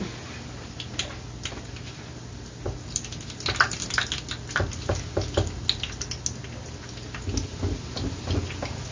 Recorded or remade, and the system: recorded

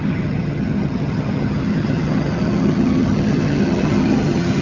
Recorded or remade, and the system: remade, vocoder, HiFi-GAN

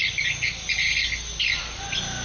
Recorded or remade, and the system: recorded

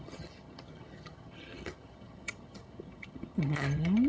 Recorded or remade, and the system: remade, vocoder, HiFi-GAN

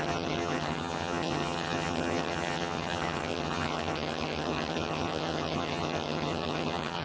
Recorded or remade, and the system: remade, vocoder, HiFi-GAN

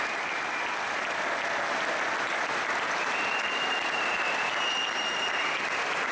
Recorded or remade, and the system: recorded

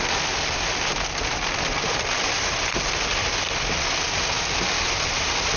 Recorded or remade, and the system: recorded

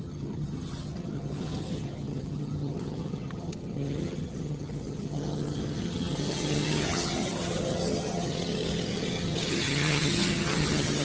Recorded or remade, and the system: remade, vocoder, HiFi-GAN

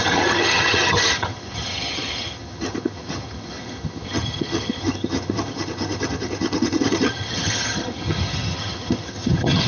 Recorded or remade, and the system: remade, vocoder, HiFi-GAN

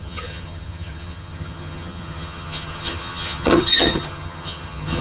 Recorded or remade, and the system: remade, vocoder, HiFi-GAN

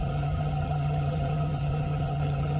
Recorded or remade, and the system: remade, vocoder, HiFi-GAN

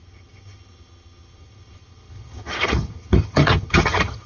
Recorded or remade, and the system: remade, vocoder, HiFi-GAN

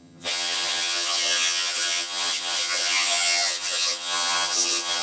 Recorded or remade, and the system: remade, vocoder, HiFi-GAN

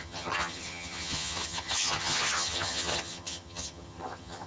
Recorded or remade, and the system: remade, vocoder, HiFi-GAN